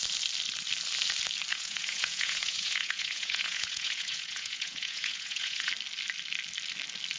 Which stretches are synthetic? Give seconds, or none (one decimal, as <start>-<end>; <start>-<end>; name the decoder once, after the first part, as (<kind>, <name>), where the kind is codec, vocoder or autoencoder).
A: 1.5-5.7 (vocoder, Vocos)